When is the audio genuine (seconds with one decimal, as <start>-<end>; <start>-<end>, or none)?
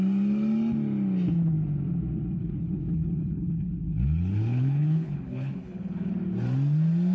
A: 0.0-2.4; 6.1-7.1